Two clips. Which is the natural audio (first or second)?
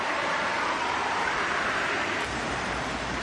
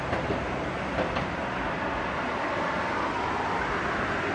second